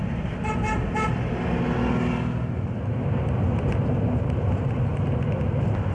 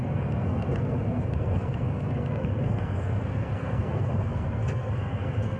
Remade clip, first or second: second